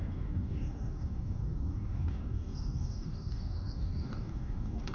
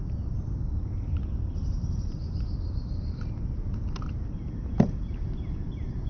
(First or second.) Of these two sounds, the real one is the second